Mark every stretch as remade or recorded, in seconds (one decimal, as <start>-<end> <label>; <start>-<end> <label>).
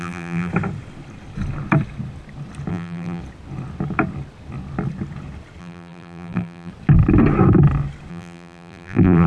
0.0-0.5 remade; 0.5-2.7 recorded; 2.7-3.2 remade; 3.2-5.6 recorded; 5.6-6.7 remade; 6.7-8.1 recorded; 8.1-9.3 remade